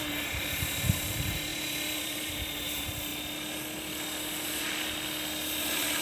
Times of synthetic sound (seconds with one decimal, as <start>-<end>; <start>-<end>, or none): 0.0-3.1; 5.6-6.0